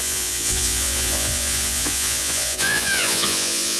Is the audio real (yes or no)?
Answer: no